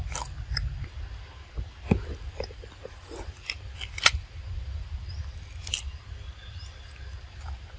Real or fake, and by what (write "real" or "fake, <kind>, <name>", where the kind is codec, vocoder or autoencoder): real